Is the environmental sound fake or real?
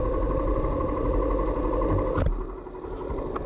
real